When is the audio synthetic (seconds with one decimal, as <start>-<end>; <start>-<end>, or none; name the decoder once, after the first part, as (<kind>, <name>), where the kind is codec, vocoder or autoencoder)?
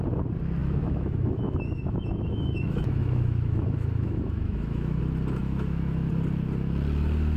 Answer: 0.6-5.0 (autoencoder, DAC-VAE); 5.4-6.1